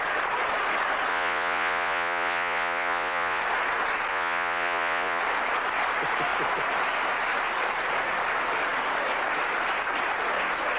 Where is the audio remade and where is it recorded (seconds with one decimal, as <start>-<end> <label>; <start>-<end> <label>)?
0.0-1.1 recorded; 1.1-3.4 remade; 3.4-4.1 recorded; 4.1-5.2 remade; 5.2-10.8 recorded